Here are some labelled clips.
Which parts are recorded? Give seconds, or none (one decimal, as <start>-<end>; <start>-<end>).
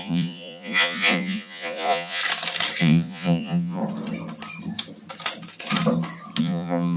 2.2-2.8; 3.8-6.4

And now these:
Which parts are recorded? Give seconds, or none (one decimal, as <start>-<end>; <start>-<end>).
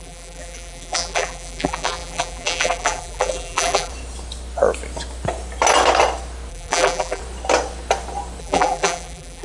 3.9-6.5; 7.2-8.4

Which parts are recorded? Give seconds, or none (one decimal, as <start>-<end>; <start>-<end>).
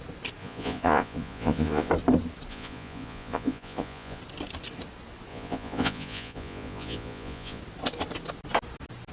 0.0-0.4; 1.9-2.5; 4.2-5.3; 7.6-9.1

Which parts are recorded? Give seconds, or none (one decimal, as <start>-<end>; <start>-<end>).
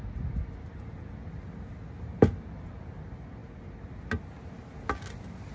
0.0-5.5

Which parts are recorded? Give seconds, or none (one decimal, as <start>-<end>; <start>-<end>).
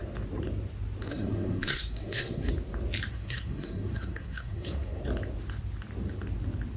0.0-1.1; 2.5-3.1; 5.0-6.8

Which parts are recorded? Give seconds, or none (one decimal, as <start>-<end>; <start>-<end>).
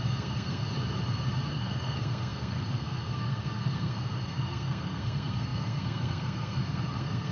0.6-1.5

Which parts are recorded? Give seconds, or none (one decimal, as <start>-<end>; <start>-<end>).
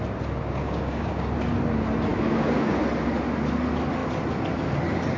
0.0-0.6; 1.3-2.1; 2.8-5.2